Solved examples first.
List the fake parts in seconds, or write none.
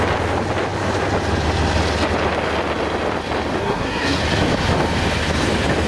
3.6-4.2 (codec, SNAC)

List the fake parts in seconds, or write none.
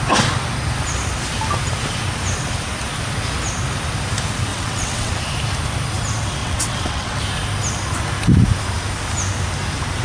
4.5-5.1 (vocoder, WaveNeXt); 6.4-7.2